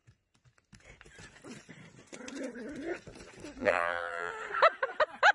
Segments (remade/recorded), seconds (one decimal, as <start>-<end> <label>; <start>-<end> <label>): 0.0-3.6 recorded; 3.6-4.3 remade; 4.3-5.3 recorded